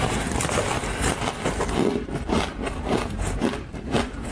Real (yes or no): yes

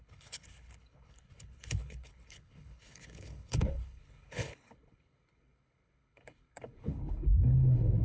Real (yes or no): no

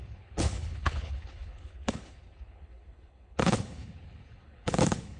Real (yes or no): no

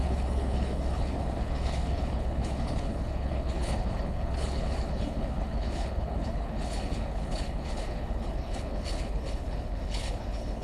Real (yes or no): no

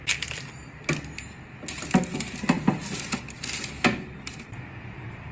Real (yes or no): yes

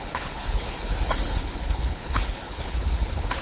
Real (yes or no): no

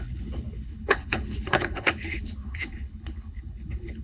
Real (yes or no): no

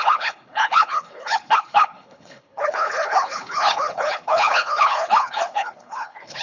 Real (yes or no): no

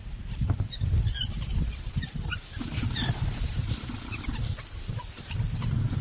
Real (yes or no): yes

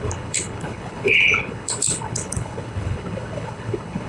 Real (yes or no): no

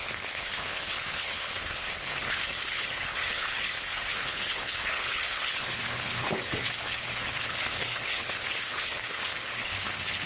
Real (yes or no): no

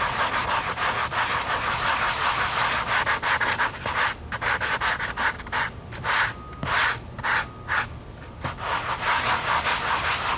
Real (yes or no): yes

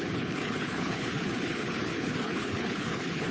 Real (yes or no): no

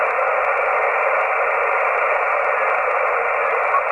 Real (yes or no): yes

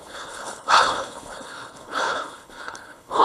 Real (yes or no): no